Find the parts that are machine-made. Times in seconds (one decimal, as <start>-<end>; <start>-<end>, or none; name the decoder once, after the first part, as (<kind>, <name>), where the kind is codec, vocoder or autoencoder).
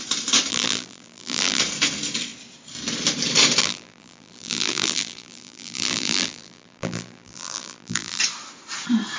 0.5-1.6 (vocoder, BigVGAN v2); 3.6-8.2